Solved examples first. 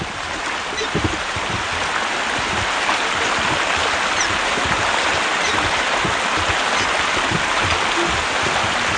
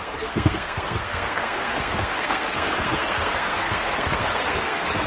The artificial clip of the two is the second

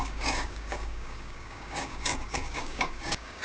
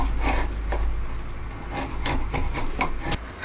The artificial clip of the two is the first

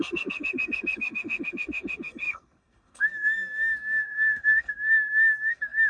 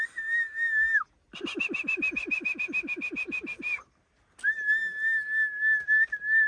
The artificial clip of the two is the first